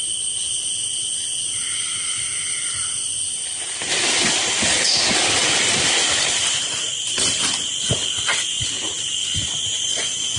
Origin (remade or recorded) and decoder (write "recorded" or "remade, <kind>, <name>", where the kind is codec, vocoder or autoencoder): recorded